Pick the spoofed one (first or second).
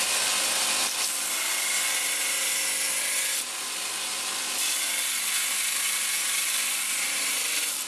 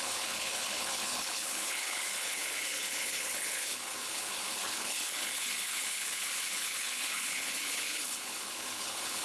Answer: second